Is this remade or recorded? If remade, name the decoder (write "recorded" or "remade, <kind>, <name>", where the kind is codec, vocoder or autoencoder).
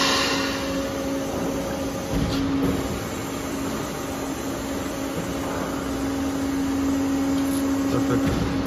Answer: recorded